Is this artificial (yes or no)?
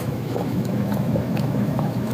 yes